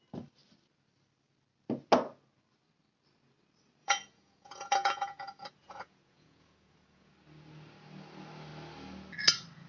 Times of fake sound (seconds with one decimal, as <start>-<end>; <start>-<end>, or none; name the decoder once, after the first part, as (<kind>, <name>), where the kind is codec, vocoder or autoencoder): 3.8-7.1 (vocoder, Vocos)